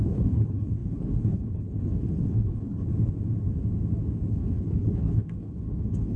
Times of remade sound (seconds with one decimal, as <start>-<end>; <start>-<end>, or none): 0.0-2.9; 4.3-6.2